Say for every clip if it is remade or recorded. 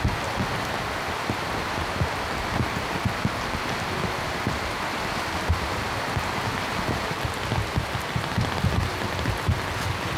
recorded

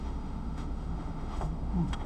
remade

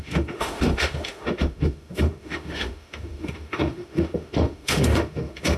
remade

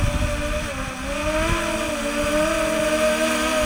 recorded